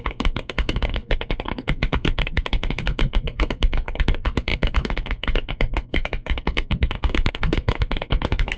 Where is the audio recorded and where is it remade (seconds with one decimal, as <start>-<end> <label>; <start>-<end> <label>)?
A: 0.0-8.6 remade